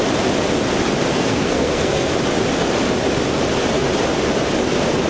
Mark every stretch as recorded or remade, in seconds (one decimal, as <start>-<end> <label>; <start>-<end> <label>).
0.0-1.1 recorded; 1.1-2.1 remade; 2.1-5.1 recorded